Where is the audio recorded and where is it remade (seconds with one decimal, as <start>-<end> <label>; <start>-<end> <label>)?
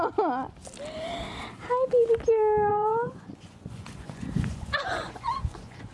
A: 0.0-2.7 recorded; 2.7-5.9 remade